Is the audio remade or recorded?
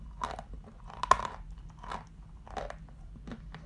recorded